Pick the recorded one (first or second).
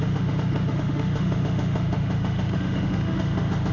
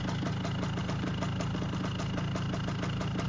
second